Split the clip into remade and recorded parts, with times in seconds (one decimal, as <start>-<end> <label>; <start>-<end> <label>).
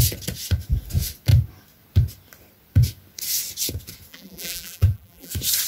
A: 0.0-4.1 recorded; 4.1-5.3 remade; 5.3-5.7 recorded